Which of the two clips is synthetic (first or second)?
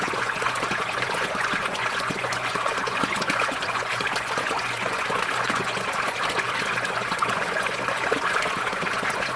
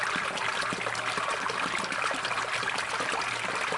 first